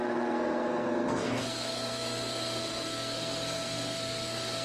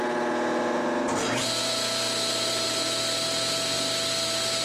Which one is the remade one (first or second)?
first